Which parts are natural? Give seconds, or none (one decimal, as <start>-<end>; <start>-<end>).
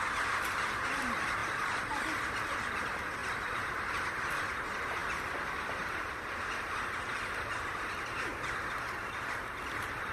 0.0-1.4; 2.2-3.2; 4.4-5.0; 7.9-10.1